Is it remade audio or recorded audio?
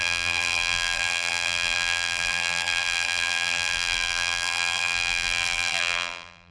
remade